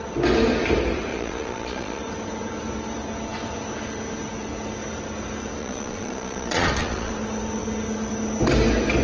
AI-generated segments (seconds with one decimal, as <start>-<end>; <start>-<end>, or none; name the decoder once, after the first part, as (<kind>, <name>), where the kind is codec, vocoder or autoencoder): 1.1-2.0 (vocoder, Vocos); 5.6-7.1